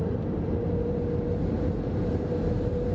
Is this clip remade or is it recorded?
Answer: recorded